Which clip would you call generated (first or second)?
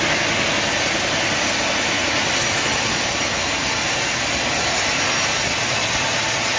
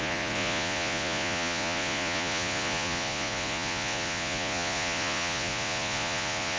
second